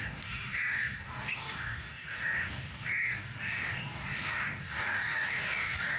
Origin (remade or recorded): remade